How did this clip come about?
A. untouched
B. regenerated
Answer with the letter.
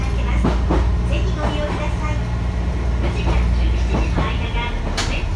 A